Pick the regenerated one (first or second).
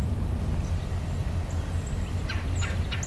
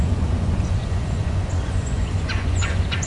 second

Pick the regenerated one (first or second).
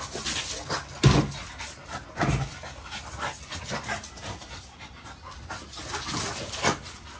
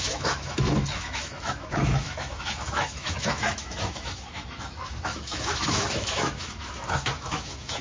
second